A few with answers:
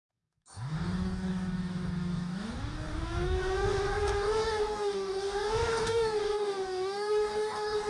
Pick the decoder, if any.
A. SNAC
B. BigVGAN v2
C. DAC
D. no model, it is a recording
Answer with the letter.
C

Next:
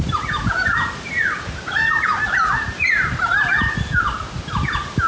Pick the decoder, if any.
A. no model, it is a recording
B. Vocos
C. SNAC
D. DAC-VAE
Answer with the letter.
A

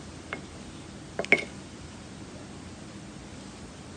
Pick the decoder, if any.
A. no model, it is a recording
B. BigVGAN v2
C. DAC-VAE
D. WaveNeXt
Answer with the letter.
A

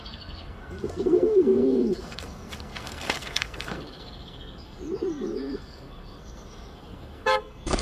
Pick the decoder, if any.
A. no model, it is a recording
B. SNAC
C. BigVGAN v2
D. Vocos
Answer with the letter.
B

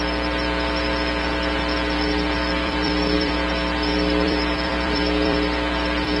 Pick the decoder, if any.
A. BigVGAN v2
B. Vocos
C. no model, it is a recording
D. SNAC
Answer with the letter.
A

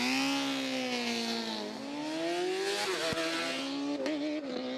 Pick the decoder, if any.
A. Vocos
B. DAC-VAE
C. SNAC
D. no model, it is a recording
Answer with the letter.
D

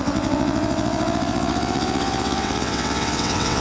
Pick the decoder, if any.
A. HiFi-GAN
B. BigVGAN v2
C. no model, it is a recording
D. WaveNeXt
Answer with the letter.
D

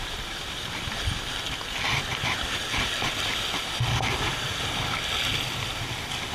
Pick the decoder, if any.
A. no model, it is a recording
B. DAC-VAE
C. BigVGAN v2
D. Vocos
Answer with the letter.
A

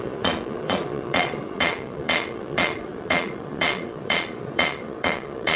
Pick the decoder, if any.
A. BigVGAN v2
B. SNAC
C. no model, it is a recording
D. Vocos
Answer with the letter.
D